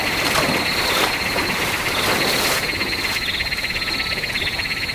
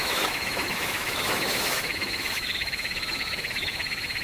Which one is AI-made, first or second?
second